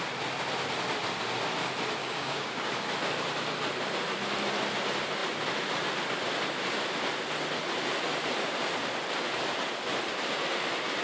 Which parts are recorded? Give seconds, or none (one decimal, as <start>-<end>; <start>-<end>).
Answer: 0.0-2.0; 2.7-11.0